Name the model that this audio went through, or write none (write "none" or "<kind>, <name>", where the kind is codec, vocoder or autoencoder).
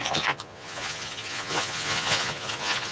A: vocoder, Vocos